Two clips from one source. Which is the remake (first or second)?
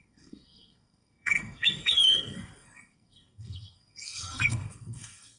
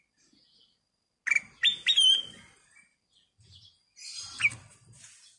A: first